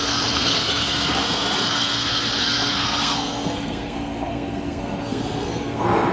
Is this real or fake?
fake